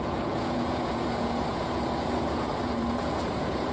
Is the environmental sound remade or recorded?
remade